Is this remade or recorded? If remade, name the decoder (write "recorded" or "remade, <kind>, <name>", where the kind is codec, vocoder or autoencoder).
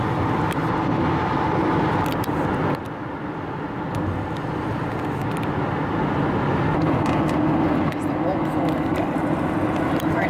recorded